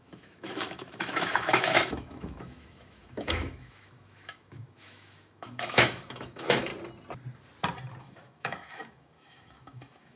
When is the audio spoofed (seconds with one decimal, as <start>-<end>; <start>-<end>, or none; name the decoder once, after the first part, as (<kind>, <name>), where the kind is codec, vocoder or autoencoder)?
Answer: 0.0-6.7 (autoencoder, DAC-VAE); 8.0-10.2